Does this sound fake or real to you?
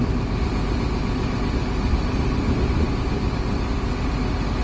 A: real